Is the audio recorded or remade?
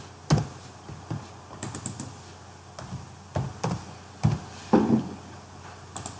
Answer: recorded